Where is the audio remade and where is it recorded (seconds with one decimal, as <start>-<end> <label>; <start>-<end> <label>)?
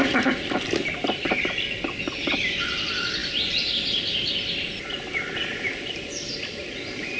0.0-7.2 recorded